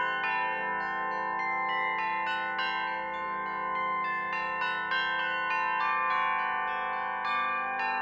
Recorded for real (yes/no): yes